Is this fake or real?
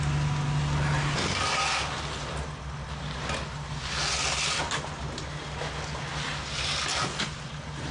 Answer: real